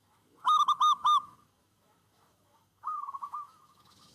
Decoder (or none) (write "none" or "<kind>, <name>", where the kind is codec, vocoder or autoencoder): autoencoder, DAC-VAE